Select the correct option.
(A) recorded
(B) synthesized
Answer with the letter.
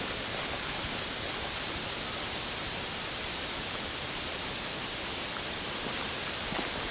B